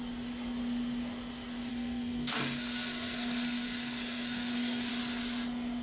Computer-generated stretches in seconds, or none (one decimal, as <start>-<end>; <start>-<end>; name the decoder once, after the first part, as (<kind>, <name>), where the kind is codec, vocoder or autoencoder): 1.7-4.9 (codec, SNAC)